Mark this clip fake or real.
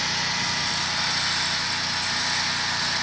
real